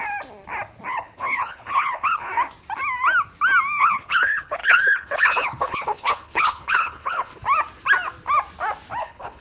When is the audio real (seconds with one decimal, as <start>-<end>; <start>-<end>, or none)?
0.0-0.9; 2.3-3.8; 7.3-9.0